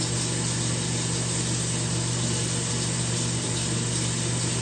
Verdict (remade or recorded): recorded